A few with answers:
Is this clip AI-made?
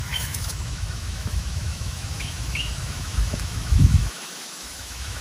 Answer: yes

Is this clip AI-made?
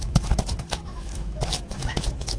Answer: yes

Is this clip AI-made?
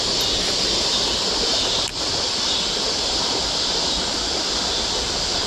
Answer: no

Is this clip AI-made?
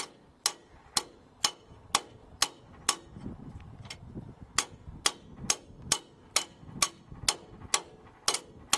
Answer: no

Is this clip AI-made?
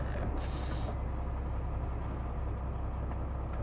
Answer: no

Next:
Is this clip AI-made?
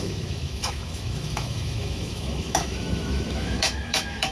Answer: yes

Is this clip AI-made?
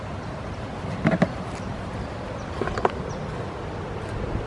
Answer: no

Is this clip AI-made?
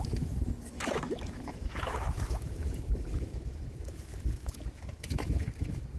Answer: yes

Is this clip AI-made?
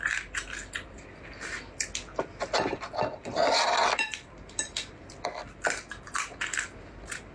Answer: no